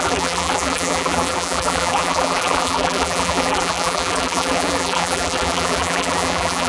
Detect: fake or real fake